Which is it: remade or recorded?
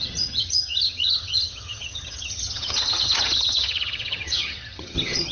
remade